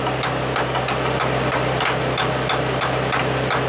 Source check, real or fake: real